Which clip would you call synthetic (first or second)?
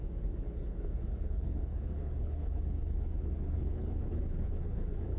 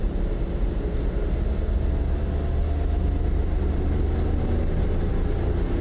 first